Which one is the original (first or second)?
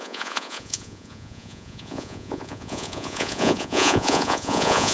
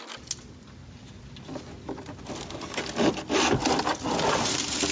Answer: second